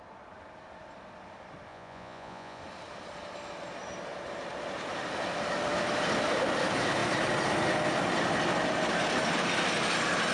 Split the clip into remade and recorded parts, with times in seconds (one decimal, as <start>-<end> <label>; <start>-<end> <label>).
0.0-1.7 recorded; 1.7-2.6 remade; 2.6-10.3 recorded